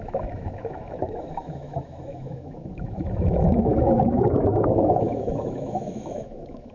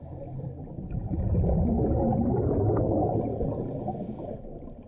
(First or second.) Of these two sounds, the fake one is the first